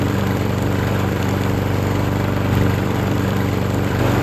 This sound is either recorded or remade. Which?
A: remade